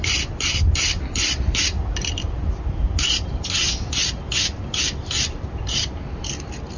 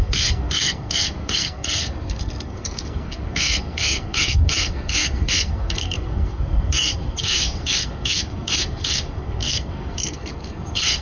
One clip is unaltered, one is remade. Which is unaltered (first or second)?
first